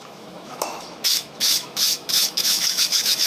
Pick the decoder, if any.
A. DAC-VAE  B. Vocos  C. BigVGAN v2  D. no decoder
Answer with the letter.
A